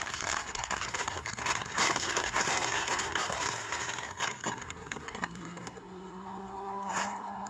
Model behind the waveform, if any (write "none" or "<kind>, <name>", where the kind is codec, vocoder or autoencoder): codec, SNAC